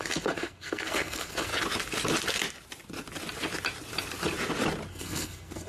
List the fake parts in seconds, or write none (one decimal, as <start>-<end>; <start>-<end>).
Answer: 0.0-1.5; 4.9-5.7